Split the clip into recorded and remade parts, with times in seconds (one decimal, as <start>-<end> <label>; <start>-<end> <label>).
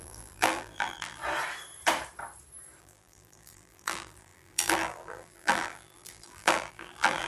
0.0-1.2 remade; 1.2-2.8 recorded; 2.8-7.3 remade